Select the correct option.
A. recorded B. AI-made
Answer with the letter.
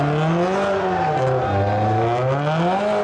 A